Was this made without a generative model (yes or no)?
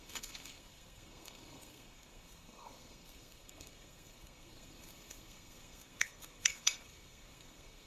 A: no